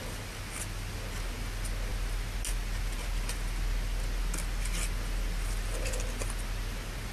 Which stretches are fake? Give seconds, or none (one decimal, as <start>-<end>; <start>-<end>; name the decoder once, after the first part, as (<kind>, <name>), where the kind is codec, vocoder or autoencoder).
none